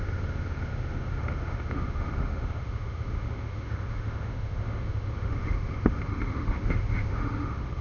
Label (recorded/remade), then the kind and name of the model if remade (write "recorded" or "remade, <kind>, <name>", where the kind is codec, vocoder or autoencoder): remade, autoencoder, DAC-VAE